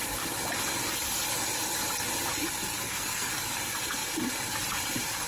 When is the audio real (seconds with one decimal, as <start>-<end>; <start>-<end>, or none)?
0.0-2.7; 3.3-5.3